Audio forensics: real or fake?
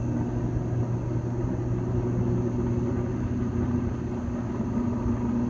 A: real